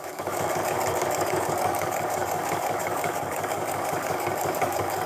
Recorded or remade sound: remade